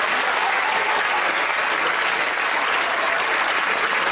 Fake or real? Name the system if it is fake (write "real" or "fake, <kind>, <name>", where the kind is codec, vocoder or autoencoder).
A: real